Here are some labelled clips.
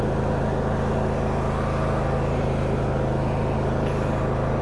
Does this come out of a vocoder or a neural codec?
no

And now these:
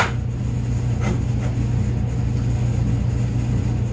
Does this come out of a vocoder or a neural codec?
no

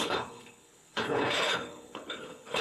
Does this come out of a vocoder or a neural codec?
yes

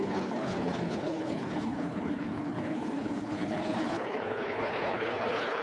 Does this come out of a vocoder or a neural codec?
yes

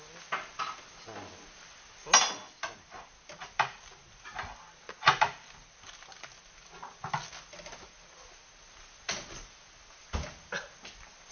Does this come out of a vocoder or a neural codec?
no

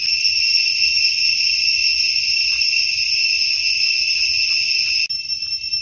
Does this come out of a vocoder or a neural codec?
no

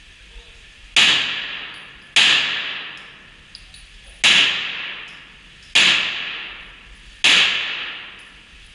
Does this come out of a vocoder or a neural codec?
no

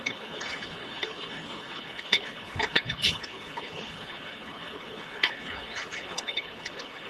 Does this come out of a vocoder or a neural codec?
yes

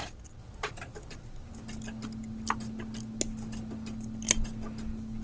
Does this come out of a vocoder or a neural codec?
no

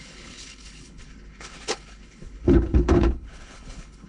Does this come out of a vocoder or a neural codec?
yes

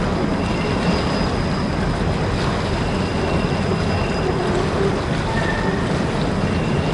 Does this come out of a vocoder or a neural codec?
no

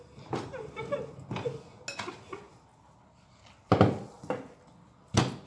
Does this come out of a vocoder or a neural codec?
no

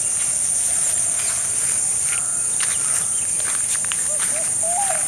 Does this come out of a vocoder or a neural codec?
no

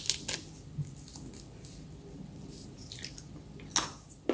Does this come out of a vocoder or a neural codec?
no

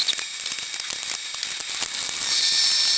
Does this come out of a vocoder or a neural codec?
no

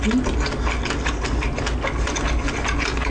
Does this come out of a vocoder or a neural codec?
no